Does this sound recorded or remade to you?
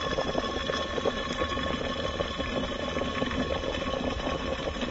recorded